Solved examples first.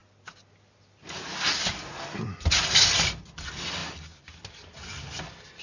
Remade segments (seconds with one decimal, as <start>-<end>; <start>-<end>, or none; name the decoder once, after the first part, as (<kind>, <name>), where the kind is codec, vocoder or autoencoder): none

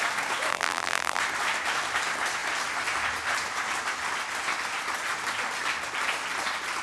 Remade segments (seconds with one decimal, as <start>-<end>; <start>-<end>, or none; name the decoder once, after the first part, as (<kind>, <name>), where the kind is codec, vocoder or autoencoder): 0.5-1.2 (vocoder, BigVGAN v2)

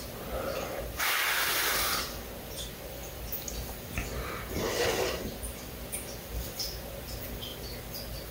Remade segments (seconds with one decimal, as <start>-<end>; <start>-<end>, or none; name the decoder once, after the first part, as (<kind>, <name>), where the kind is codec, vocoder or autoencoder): 0.0-1.2 (vocoder, BigVGAN v2); 1.9-7.5

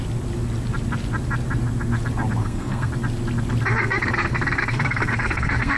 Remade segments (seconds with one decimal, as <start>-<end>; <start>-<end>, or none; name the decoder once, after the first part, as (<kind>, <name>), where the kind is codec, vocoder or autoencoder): 2.4-2.9 (codec, SNAC); 3.8-5.8